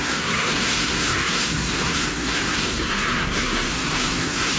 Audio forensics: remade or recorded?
remade